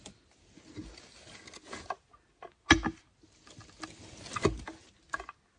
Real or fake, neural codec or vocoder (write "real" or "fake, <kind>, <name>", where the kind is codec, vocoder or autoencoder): real